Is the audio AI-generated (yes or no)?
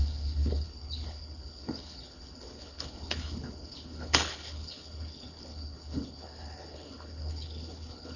yes